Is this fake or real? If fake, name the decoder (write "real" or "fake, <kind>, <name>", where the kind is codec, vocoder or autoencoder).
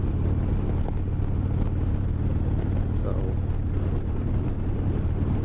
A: real